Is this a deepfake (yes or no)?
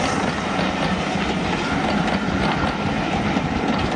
no